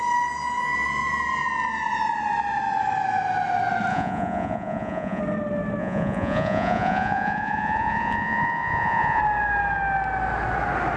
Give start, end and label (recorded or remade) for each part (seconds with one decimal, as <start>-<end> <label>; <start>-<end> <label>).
0.0-3.9 recorded; 3.9-5.2 remade; 5.2-5.8 recorded; 5.8-9.2 remade; 9.2-11.0 recorded